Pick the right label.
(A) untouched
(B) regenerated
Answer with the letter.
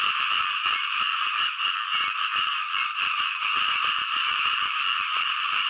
B